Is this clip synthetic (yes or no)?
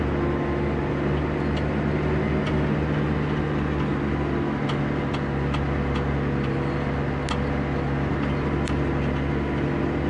no